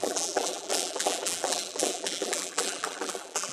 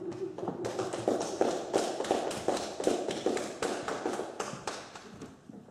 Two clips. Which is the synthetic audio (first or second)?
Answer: first